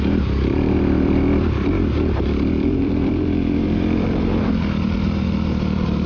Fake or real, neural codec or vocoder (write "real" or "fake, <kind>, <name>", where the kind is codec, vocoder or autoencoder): fake, vocoder, BigVGAN v2